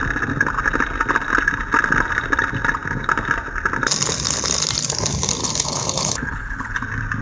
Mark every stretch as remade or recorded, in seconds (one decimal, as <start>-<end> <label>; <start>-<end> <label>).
0.0-5.4 recorded; 5.4-6.8 remade; 6.8-7.2 recorded